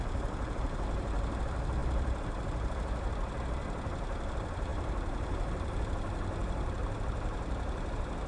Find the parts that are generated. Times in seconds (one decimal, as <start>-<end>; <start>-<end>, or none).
0.0-8.3